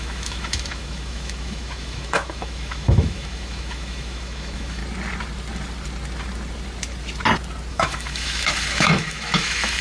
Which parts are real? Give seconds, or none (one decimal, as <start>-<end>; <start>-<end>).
4.8-7.7